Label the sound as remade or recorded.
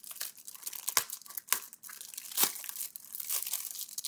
recorded